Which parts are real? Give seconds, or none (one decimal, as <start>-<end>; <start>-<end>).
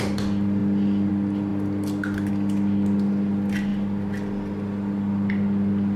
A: 0.0-6.0